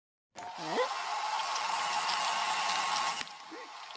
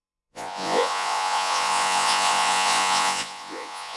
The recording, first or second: first